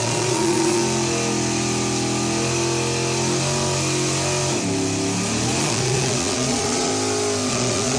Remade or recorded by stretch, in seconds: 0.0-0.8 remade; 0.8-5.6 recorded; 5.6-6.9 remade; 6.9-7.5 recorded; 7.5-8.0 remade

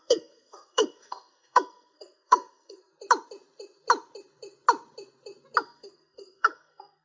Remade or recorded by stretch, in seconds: 0.0-2.9 remade; 2.9-5.6 recorded; 5.6-7.0 remade

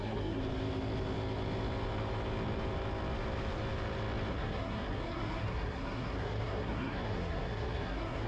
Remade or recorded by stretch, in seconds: 0.0-0.4 remade; 0.4-4.3 recorded; 4.3-8.3 remade

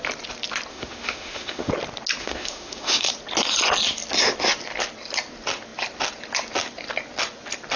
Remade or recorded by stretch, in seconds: 0.0-0.7 recorded; 0.7-1.7 remade; 1.7-2.2 recorded; 2.2-3.1 remade; 3.1-7.8 recorded